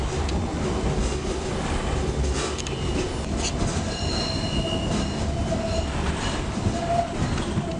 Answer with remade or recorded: recorded